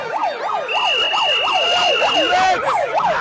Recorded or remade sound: recorded